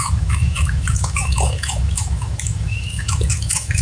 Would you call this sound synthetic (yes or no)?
yes